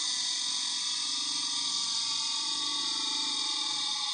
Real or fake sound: real